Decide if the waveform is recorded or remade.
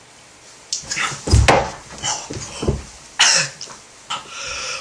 recorded